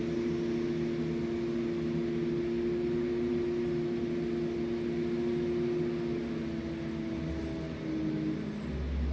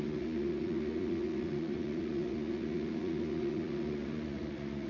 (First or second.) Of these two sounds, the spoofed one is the second